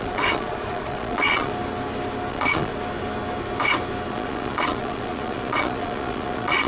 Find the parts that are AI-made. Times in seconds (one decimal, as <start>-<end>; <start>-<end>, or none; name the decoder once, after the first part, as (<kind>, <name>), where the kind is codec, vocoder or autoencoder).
0.0-1.5 (vocoder, Vocos); 2.3-2.7; 4.1-6.7